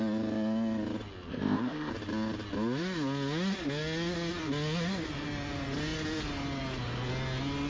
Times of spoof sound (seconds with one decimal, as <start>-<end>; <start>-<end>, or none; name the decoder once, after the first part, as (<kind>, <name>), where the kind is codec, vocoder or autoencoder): 1.3-1.9 (codec, ZipCodec)